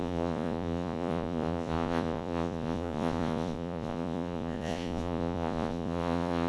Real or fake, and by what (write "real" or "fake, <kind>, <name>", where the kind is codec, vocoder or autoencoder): fake, vocoder, Vocos